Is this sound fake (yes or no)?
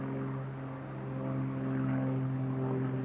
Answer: no